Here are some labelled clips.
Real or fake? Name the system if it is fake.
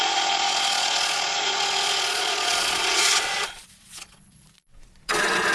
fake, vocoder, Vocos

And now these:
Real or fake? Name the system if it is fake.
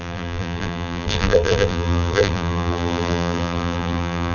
fake, vocoder, BigVGAN v2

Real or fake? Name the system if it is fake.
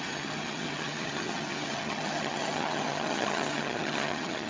fake, vocoder, HiFi-GAN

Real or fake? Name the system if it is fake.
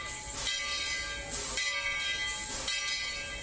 real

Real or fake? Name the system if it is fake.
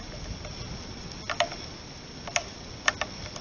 real